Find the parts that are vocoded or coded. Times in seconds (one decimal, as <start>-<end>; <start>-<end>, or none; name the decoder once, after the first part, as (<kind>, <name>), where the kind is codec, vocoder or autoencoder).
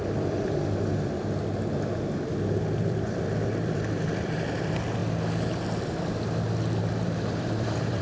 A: 0.0-5.0 (vocoder, BigVGAN v2); 6.8-8.0